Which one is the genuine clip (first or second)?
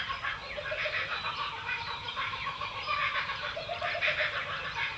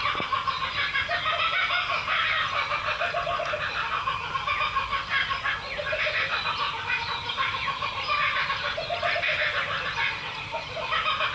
second